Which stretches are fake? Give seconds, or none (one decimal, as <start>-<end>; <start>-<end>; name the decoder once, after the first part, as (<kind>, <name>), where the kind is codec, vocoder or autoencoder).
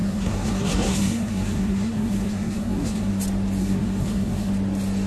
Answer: 0.0-3.1 (codec, SNAC); 3.6-4.5